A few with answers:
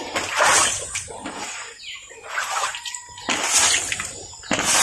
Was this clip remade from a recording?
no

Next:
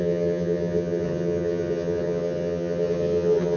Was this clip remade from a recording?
yes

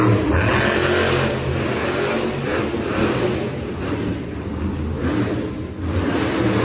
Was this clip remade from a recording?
no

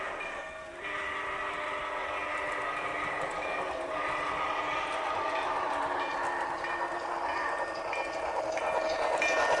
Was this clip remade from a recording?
no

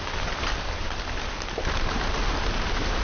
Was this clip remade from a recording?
no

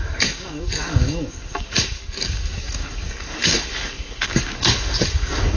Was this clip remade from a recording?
yes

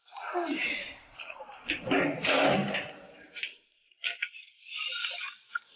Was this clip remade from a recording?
no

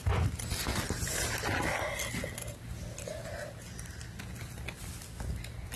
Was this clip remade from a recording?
no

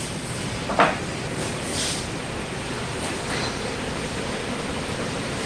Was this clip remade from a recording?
yes